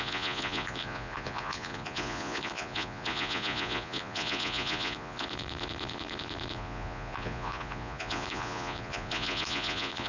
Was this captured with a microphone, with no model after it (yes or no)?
no